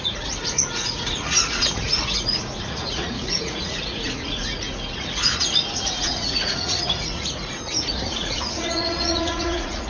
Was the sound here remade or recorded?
remade